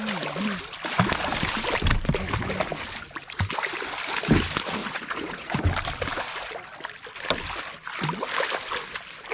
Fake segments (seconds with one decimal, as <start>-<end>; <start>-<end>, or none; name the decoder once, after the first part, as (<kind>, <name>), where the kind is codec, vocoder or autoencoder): 4.8-5.6 (vocoder, Vocos)

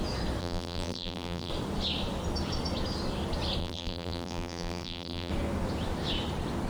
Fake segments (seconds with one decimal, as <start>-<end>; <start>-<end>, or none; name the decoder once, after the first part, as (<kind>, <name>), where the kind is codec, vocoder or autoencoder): 0.4-1.5 (vocoder, BigVGAN v2); 3.6-5.3

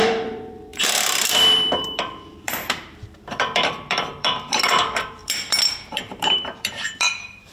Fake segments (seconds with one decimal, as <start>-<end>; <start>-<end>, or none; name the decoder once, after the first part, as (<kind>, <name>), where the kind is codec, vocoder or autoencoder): 0.0-7.5 (vocoder, BigVGAN v2)